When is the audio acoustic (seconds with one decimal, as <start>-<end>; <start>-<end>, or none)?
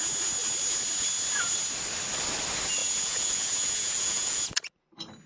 0.0-2.8; 4.7-5.3